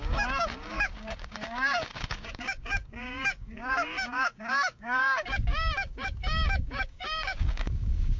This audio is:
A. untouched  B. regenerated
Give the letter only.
B